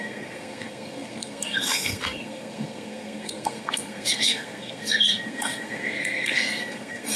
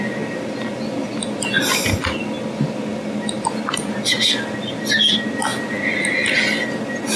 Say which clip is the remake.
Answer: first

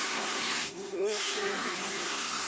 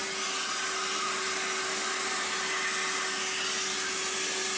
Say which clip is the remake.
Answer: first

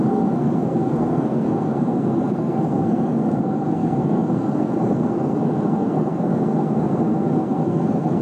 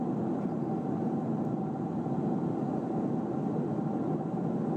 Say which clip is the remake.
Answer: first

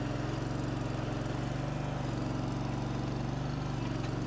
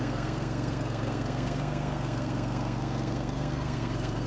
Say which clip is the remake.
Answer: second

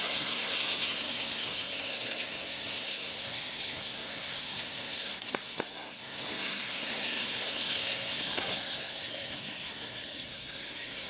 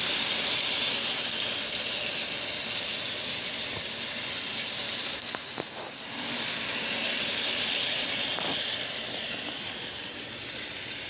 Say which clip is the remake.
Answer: first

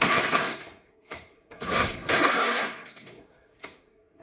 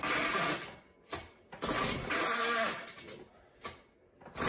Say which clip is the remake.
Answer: first